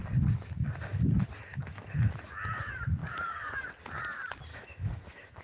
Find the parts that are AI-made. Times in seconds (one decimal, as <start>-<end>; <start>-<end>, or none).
1.5-2.2; 4.5-5.4